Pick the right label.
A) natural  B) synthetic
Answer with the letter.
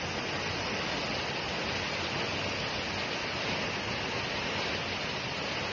A